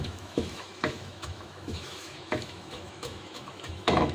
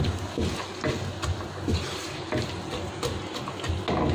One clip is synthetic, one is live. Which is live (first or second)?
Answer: second